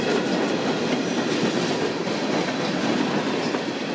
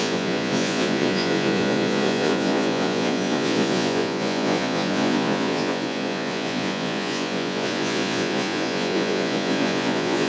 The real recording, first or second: first